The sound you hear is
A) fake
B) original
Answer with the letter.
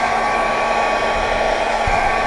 B